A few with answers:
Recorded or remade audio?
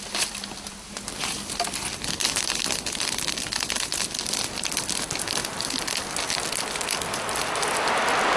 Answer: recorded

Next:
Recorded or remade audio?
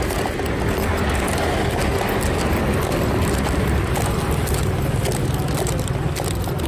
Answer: recorded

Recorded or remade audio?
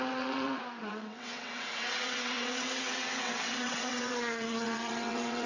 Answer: remade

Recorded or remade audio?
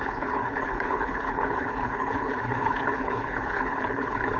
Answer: remade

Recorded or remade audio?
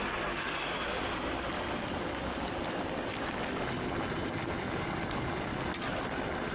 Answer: recorded